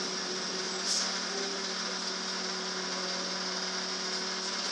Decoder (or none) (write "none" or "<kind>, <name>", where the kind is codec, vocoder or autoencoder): none